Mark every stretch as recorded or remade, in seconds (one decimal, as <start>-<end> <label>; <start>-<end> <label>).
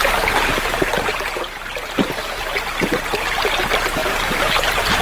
0.0-4.0 recorded; 4.0-5.0 remade